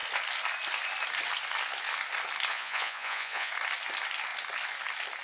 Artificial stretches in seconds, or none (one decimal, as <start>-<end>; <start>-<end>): 2.5-3.5